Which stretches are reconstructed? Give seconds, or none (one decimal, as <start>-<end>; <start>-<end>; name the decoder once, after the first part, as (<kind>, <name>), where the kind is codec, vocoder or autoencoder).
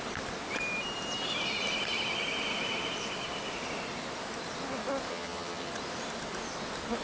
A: 5.1-5.7 (vocoder, HiFi-GAN)